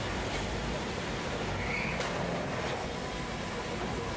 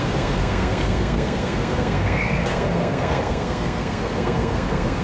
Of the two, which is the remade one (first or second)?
second